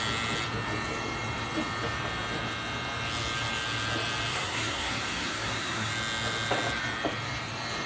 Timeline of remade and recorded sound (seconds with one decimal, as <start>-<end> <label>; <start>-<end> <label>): 0.0-4.3 recorded; 4.3-5.9 remade; 5.9-7.9 recorded